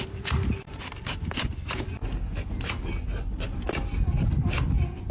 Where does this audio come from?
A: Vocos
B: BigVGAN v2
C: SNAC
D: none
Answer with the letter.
D